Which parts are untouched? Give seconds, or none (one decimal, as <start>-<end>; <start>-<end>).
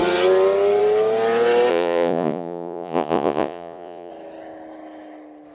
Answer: 0.0-1.7; 4.1-5.5